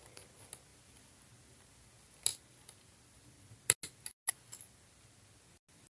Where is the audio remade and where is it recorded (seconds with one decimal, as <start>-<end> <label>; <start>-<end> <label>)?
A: 0.0-6.0 recorded